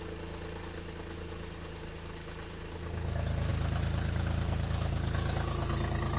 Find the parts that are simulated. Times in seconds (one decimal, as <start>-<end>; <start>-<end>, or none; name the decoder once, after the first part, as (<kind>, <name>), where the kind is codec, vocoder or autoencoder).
none